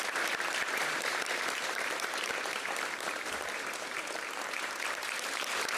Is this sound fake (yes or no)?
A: yes